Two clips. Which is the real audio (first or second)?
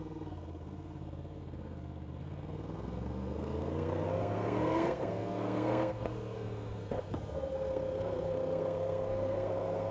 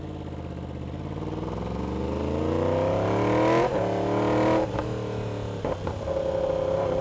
second